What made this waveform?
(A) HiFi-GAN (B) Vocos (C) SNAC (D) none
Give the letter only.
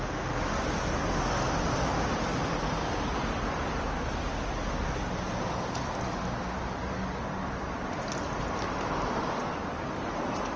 D